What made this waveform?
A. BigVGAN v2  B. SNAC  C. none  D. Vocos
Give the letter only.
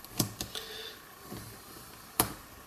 C